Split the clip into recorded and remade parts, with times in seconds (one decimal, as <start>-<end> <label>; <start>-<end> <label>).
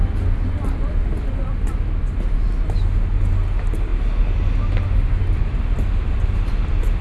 0.0-7.0 recorded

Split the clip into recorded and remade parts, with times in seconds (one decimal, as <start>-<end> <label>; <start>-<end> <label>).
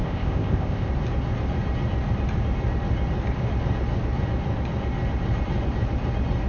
0.0-0.9 remade; 0.9-6.5 recorded